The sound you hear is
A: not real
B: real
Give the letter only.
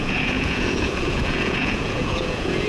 A